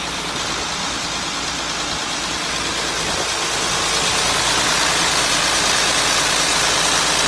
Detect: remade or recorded recorded